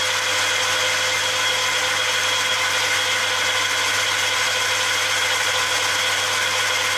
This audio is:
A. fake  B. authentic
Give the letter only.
B